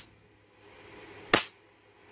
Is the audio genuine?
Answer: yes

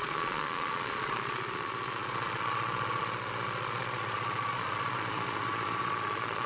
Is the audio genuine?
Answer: no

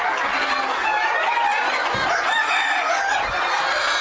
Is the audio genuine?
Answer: yes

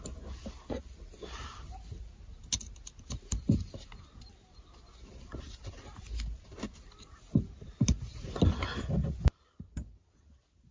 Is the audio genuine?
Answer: yes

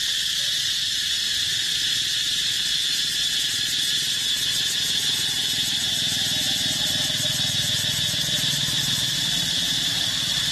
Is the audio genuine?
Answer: yes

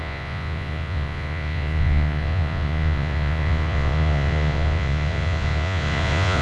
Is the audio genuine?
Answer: no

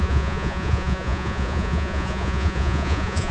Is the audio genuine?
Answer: no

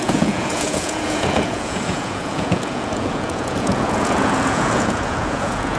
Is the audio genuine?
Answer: no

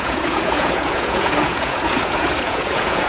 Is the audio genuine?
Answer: no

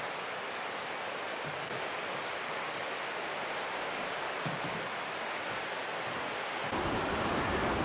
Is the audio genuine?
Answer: yes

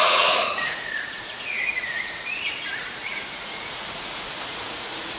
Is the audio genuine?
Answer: no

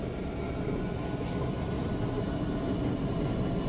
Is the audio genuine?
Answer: yes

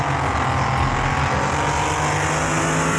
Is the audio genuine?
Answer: yes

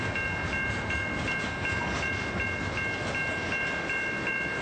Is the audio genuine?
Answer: yes